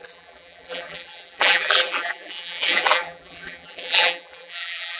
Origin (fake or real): fake